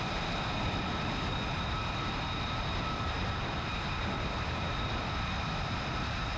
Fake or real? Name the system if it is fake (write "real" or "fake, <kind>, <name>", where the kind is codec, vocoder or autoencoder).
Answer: fake, vocoder, BigVGAN v2